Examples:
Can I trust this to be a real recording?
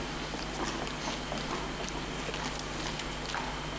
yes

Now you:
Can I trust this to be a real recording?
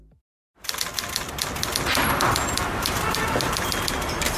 yes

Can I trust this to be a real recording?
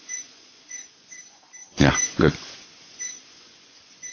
no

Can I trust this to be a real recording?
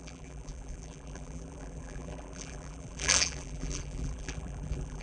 no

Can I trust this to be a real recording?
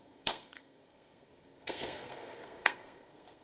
no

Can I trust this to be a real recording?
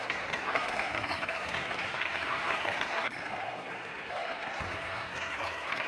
no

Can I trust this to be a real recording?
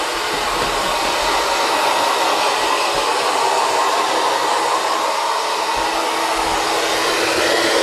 yes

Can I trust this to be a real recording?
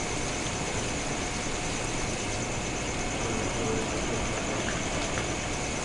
yes